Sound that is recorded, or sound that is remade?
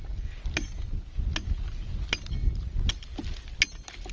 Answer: recorded